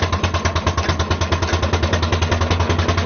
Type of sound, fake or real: real